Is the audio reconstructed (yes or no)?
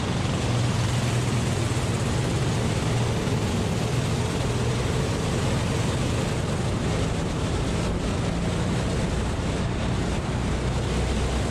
no